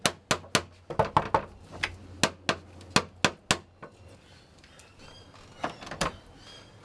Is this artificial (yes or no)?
no